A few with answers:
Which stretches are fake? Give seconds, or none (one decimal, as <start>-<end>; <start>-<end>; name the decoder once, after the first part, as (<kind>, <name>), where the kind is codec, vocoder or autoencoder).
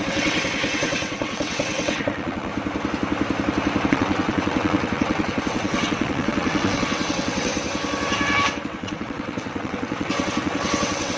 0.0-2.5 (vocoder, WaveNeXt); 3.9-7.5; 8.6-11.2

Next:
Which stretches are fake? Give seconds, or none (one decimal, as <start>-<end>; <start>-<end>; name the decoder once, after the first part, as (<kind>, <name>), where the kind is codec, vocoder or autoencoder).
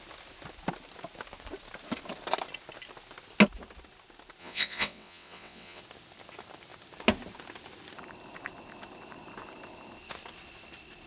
4.4-5.8 (vocoder, WaveNeXt)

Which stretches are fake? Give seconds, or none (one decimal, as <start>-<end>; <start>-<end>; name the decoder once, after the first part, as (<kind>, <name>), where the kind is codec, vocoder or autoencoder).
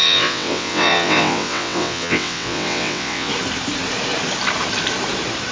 0.0-3.3 (vocoder, WaveNeXt)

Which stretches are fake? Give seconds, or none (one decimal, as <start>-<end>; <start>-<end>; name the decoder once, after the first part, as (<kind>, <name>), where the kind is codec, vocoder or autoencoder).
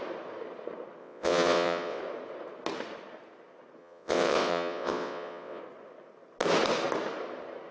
1.0-2.0 (vocoder, WaveNeXt); 3.8-5.6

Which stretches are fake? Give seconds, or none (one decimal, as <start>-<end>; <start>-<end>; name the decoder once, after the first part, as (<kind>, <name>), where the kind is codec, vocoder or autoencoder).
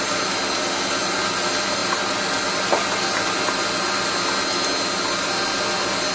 none